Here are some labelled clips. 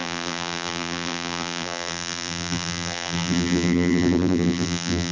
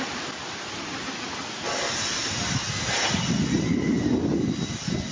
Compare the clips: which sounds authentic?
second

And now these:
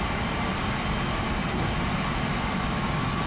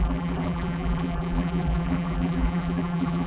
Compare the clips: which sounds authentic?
first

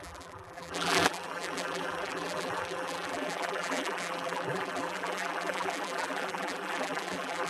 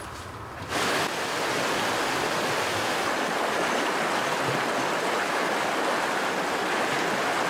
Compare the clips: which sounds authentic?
second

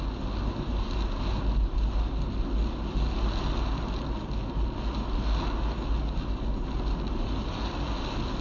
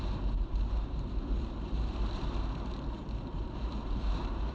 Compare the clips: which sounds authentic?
first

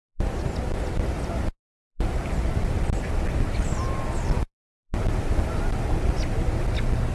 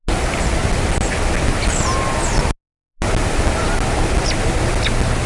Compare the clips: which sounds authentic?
second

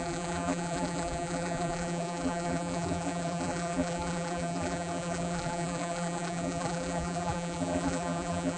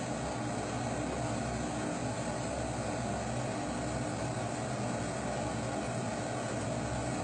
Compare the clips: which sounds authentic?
second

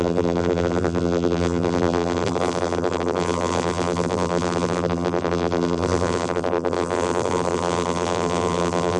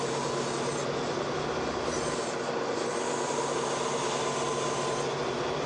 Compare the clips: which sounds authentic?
second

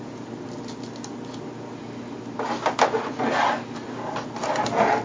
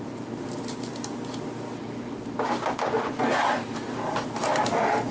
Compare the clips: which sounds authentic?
first